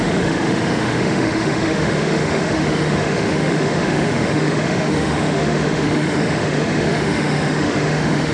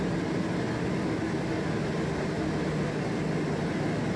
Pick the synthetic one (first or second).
first